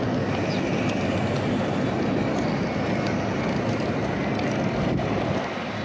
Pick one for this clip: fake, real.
real